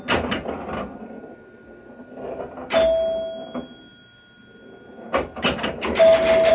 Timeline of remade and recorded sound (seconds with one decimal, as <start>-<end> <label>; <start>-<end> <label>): 0.0-6.5 recorded